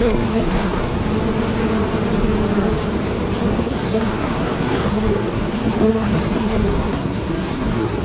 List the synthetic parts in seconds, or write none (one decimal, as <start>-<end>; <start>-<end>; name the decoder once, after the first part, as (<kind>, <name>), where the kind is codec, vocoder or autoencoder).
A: 0.0-1.0 (codec, SNAC); 3.5-8.0